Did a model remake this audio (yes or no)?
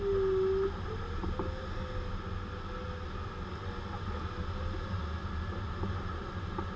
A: no